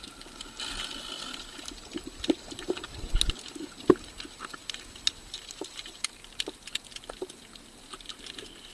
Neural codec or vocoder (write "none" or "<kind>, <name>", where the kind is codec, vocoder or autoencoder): none